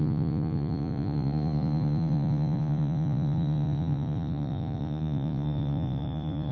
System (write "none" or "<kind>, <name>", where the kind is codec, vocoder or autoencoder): vocoder, Vocos